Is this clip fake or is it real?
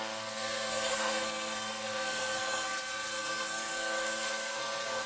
fake